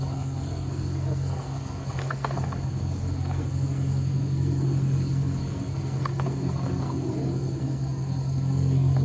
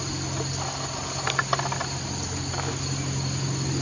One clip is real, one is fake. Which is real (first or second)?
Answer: second